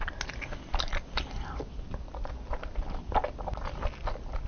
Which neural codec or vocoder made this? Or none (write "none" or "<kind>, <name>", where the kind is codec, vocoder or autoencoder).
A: none